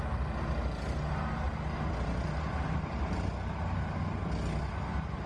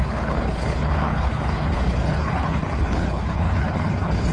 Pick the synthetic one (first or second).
second